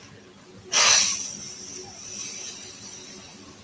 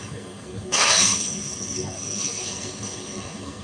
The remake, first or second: second